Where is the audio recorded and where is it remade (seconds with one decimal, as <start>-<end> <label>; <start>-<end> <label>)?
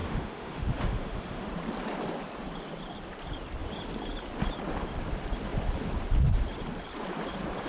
0.0-1.5 remade; 1.5-7.7 recorded